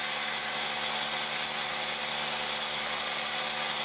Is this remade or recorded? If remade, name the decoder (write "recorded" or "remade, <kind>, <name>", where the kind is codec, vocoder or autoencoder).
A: recorded